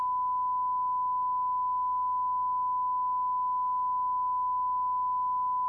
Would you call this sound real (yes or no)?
yes